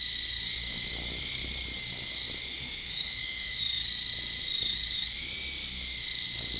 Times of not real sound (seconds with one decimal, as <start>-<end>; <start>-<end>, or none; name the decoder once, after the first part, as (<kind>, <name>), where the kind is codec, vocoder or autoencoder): 2.5-3.6 (autoencoder, DAC-VAE)